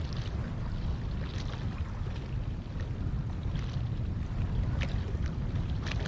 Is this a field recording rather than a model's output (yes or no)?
yes